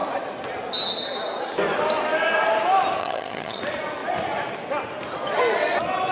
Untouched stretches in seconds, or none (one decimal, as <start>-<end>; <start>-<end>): 0.0-3.0; 3.6-6.1